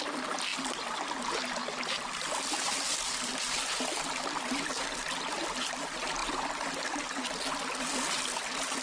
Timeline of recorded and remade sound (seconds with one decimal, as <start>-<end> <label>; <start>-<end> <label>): 0.0-8.8 recorded